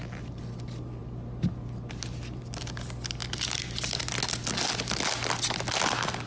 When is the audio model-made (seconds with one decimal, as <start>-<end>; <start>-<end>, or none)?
none